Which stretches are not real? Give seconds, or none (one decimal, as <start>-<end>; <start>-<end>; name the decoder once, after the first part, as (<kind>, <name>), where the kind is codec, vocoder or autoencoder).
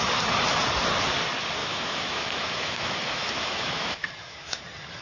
1.6-4.6 (autoencoder, DAC-VAE)